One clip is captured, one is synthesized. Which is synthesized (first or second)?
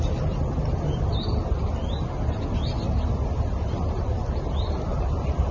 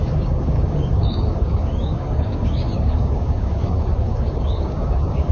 second